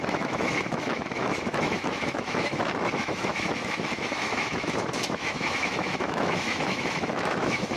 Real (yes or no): no